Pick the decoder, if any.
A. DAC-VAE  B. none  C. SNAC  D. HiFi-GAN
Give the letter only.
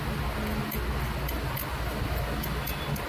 B